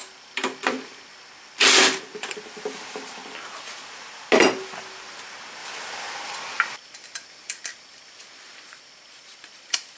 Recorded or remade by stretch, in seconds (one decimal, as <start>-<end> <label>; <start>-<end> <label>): 0.0-10.0 recorded